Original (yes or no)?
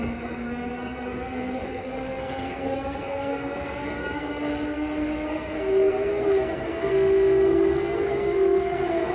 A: no